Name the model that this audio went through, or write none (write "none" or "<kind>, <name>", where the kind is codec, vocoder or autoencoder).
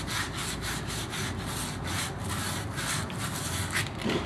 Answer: none